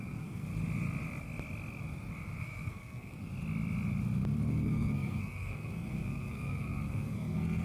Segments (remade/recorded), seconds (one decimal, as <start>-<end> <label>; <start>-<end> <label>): 0.0-0.5 remade; 0.5-2.4 recorded; 2.4-3.3 remade; 3.3-4.5 recorded; 4.5-7.6 remade